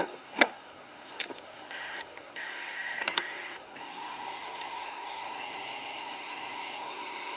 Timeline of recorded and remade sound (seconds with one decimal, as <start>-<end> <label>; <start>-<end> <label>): 0.0-7.4 remade